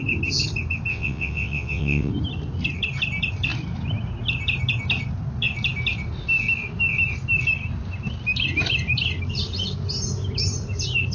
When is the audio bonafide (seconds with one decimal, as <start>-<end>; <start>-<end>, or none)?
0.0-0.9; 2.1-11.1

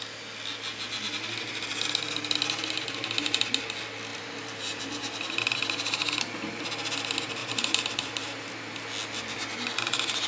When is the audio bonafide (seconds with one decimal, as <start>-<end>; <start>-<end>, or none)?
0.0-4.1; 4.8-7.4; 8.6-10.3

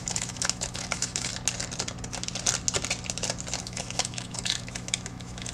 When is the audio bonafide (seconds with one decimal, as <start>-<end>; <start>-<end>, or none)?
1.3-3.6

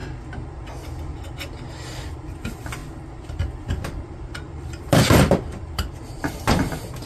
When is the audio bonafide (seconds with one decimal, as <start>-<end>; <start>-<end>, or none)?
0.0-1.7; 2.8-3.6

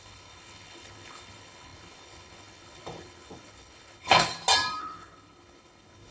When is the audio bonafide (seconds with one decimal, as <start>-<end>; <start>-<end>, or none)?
4.2-4.8

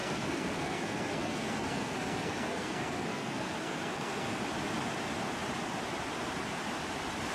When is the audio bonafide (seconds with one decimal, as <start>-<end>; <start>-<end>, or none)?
4.4-7.3

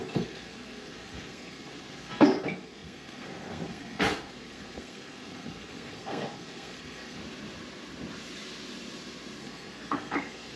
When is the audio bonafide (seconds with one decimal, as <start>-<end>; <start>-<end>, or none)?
7.2-9.4

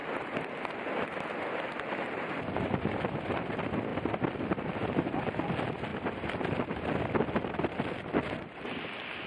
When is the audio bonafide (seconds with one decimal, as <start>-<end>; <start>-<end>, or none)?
2.4-3.9; 4.7-5.9; 7.7-9.3